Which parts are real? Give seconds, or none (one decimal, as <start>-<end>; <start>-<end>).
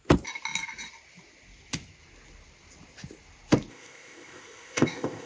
0.0-3.7